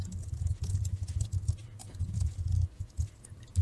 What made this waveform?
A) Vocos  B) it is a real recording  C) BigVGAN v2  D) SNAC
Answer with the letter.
B